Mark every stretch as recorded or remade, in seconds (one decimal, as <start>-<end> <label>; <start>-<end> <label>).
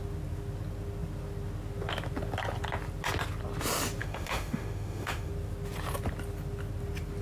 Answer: 0.0-4.0 recorded; 4.0-5.3 remade; 5.3-7.2 recorded